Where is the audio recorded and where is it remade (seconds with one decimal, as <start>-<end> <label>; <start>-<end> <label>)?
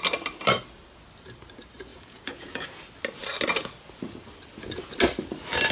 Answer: 0.0-1.9 recorded; 1.9-2.8 remade; 2.8-5.7 recorded